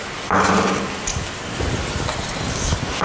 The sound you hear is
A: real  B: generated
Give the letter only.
A